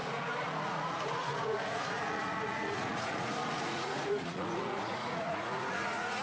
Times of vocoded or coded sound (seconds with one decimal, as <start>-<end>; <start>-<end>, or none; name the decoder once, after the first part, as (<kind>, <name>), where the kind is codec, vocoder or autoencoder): 0.0-6.2 (vocoder, Vocos)